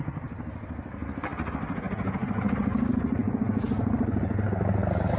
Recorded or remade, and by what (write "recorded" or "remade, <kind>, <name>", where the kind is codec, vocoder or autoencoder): recorded